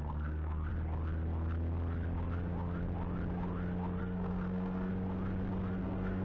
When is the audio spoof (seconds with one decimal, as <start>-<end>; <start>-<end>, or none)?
0.0-0.7; 4.0-4.9; 5.8-6.2